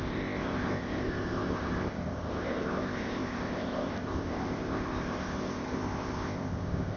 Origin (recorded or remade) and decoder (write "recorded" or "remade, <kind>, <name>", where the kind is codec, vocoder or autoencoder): remade, codec, ZipCodec